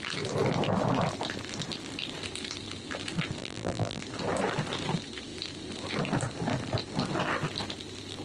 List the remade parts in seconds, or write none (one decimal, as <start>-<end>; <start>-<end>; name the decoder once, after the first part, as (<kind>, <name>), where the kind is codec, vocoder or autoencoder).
3.4-4.0 (vocoder, BigVGAN v2)